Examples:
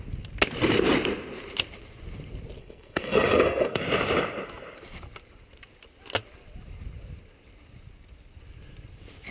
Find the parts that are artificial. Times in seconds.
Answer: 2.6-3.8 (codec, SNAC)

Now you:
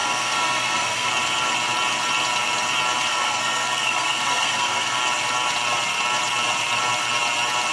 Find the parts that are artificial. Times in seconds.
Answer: 0.0-1.1 (codec, SNAC); 3.1-5.0

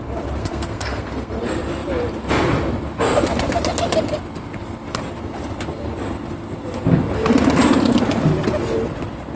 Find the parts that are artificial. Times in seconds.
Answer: 0.4-1.3 (codec, SNAC)

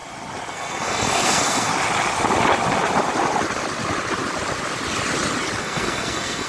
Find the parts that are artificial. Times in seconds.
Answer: 0.5-1.7 (codec, SNAC); 5.6-6.5

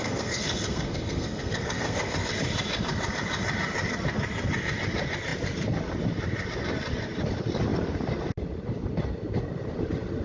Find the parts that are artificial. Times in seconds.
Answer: 0.0-2.3 (codec, SNAC)